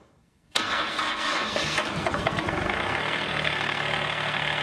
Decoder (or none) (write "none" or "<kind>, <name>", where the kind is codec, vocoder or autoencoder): codec, SNAC